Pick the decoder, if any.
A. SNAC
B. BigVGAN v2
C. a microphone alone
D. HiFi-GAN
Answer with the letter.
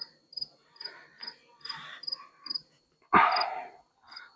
C